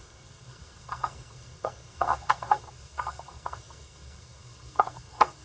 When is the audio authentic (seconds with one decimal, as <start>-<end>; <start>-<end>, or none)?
none

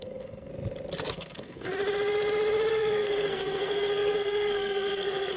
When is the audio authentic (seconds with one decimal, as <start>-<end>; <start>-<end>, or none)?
0.5-1.1; 1.7-2.7

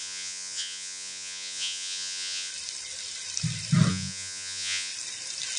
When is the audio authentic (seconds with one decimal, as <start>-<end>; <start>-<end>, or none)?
2.5-3.9; 4.9-5.6

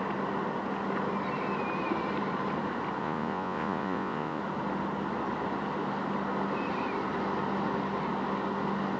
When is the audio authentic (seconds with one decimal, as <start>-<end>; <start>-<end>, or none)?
0.0-3.0; 4.4-9.0

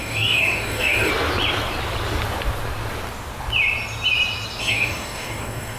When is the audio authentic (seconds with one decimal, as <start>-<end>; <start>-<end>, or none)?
1.1-4.6